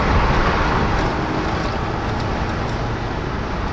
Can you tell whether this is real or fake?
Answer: real